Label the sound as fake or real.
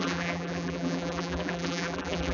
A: fake